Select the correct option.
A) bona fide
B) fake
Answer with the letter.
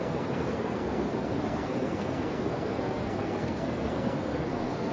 B